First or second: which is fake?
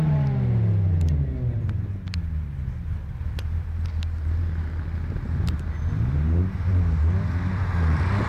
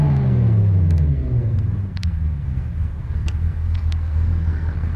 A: second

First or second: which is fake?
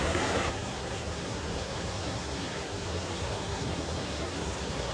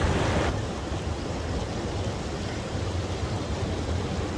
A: first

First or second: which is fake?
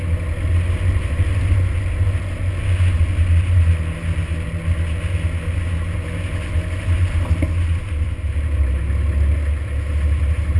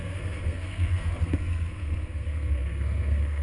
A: second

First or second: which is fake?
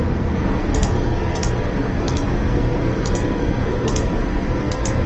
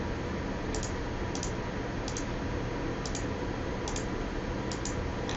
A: first